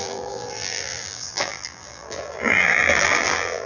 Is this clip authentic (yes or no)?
no